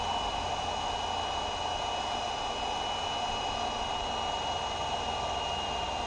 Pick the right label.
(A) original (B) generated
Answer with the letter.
A